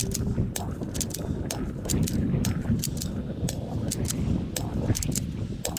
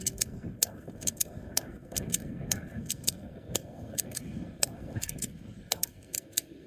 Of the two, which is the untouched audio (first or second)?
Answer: first